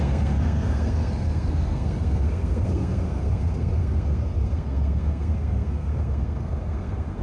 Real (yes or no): no